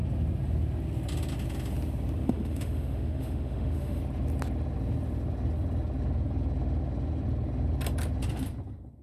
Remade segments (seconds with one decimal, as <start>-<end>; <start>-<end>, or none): 2.2-4.0